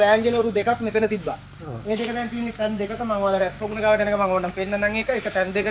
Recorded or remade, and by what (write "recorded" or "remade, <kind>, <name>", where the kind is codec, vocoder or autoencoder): remade, codec, DAC